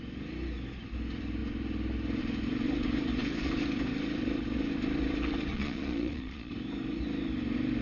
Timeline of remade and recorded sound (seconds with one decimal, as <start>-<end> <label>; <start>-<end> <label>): 0.0-5.5 recorded; 5.5-6.5 remade; 6.5-7.8 recorded